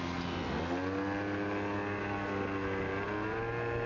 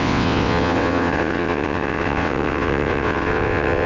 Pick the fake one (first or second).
second